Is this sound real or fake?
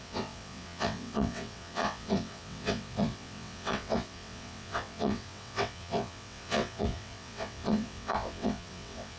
fake